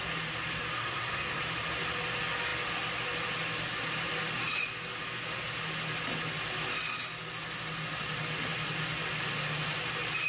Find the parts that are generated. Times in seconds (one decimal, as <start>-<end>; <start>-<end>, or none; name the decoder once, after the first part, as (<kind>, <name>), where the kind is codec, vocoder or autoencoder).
0.8-1.4 (codec, SNAC)